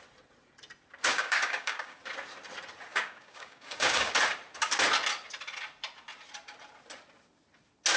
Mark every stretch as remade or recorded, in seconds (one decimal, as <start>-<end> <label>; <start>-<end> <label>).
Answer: 0.0-1.1 recorded; 1.1-2.0 remade; 2.0-2.9 recorded; 2.9-4.1 remade; 4.1-8.0 recorded